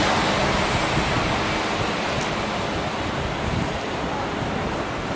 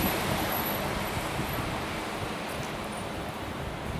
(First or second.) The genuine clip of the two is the first